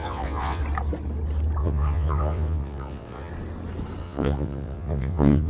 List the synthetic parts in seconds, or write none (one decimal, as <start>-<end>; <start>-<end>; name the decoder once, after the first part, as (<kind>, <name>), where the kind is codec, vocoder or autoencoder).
0.0-0.6 (vocoder, WaveNeXt); 1.6-3.3; 4.0-5.5